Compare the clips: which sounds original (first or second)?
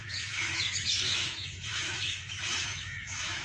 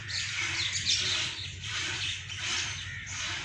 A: second